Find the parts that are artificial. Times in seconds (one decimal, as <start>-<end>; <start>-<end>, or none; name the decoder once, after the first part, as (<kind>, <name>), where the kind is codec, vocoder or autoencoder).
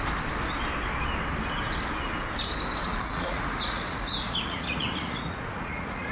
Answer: 2.8-6.1 (vocoder, Vocos)